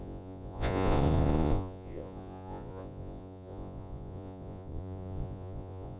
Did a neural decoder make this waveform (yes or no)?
yes